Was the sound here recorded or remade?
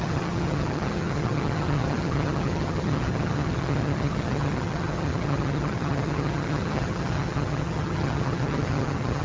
remade